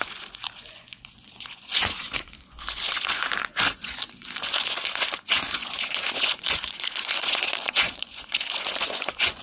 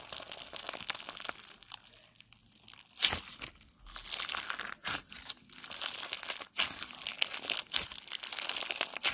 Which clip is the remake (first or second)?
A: first